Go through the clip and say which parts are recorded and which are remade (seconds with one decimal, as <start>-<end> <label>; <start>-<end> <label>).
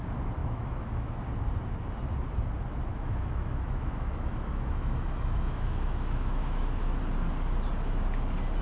0.0-0.4 recorded; 0.4-1.1 remade; 1.1-2.9 recorded; 2.9-7.0 remade; 7.0-8.6 recorded